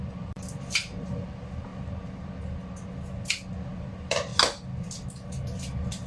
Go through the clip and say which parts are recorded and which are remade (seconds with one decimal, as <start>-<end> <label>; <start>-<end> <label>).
0.0-1.7 remade; 1.7-3.8 recorded; 3.8-4.3 remade; 4.3-6.1 recorded